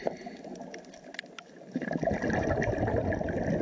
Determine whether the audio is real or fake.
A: real